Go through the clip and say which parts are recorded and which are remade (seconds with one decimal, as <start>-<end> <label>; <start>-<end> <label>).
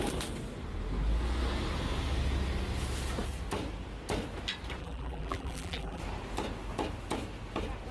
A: 0.0-4.8 recorded; 4.8-6.0 remade; 6.0-7.9 recorded